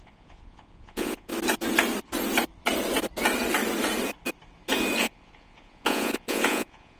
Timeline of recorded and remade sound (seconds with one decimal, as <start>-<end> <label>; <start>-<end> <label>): 0.0-1.3 remade; 1.3-5.0 recorded; 5.0-7.0 remade